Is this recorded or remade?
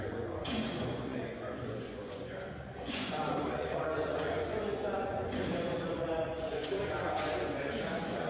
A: remade